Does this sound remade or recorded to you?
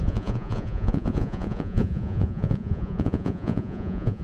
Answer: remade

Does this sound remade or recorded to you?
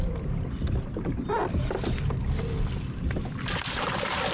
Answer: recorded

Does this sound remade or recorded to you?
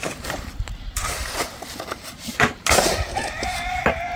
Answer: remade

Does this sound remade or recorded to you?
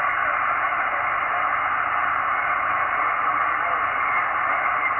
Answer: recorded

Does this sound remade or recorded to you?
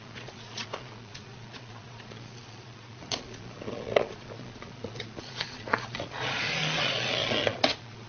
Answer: remade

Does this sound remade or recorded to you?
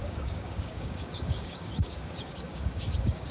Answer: remade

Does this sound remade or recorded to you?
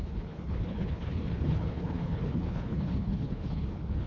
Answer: remade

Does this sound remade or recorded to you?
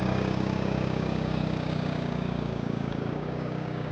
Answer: remade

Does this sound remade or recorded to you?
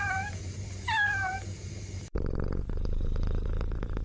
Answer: remade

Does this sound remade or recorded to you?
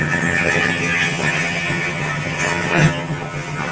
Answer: remade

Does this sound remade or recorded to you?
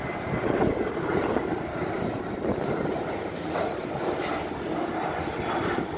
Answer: recorded